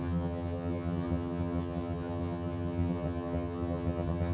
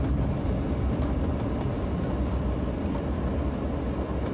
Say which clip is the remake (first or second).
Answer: first